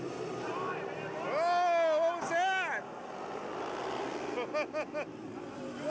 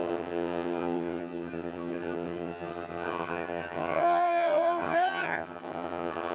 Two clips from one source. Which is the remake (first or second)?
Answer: second